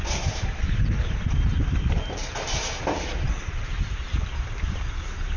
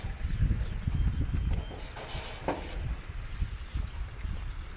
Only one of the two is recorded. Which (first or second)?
second